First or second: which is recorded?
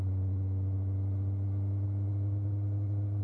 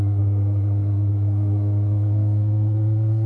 first